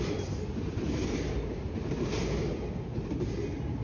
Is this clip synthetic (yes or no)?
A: no